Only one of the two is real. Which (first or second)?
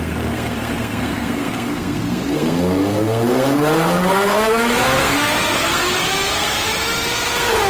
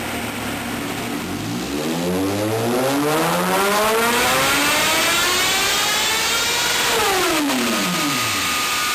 second